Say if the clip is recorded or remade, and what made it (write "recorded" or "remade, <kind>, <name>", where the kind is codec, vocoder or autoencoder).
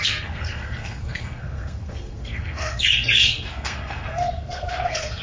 remade, codec, SNAC